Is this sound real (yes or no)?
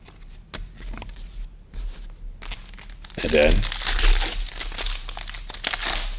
yes